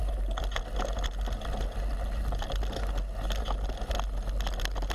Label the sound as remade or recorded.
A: recorded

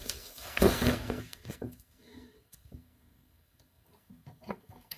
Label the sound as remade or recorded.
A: remade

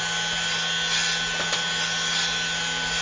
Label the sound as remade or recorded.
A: recorded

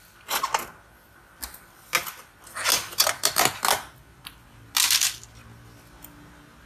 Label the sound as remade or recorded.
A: recorded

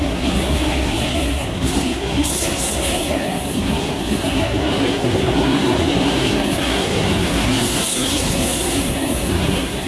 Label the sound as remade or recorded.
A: remade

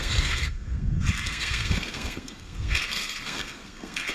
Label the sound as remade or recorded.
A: remade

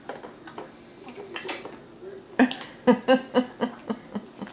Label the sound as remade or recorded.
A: recorded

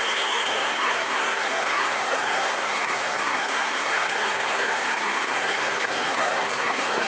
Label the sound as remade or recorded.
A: remade